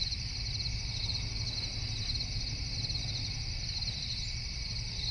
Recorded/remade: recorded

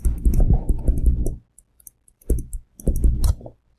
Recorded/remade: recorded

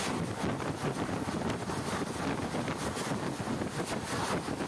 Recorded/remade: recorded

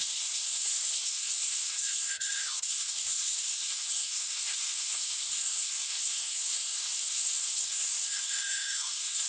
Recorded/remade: remade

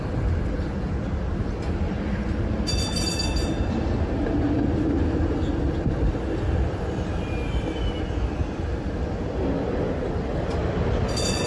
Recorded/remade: recorded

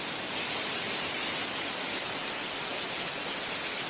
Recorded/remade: recorded